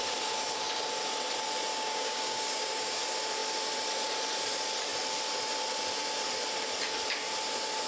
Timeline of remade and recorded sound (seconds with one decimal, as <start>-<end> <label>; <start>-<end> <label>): 0.0-1.7 recorded; 1.7-3.0 remade; 3.0-7.9 recorded